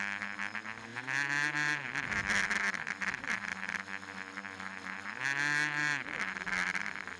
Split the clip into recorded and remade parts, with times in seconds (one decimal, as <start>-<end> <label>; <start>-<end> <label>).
0.0-7.2 recorded